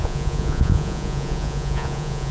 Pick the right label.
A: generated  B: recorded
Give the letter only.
A